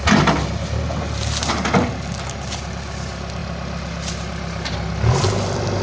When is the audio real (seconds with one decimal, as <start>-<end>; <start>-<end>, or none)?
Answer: 0.0-5.8

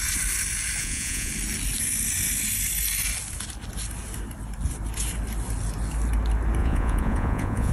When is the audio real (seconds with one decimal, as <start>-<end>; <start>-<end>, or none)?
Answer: 0.0-0.8; 1.3-6.6

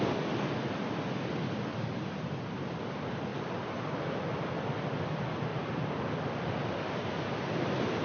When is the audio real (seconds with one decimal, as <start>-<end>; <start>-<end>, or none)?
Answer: 0.0-3.3; 4.2-5.5; 6.1-8.0

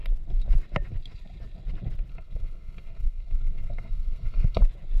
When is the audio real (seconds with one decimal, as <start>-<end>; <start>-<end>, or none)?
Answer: 0.0-2.1; 4.6-5.0

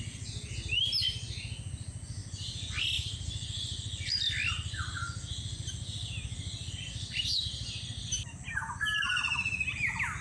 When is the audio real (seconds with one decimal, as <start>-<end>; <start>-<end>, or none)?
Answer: 0.0-10.2

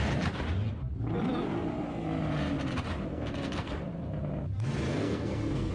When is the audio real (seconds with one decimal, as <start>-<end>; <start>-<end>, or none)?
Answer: 0.0-3.1; 3.8-4.9

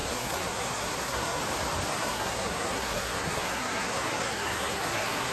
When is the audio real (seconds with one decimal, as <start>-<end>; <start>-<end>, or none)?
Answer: 1.4-1.9